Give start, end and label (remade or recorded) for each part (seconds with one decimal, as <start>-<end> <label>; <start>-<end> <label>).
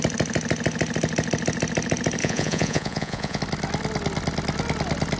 0.0-2.2 recorded; 2.2-3.4 remade; 3.4-5.2 recorded